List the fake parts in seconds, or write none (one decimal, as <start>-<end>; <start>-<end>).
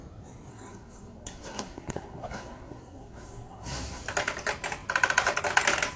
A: 0.5-4.0